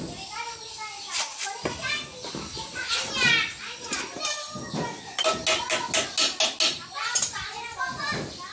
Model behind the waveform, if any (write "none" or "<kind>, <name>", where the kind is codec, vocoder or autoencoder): none